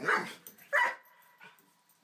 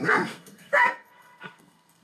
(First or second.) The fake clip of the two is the second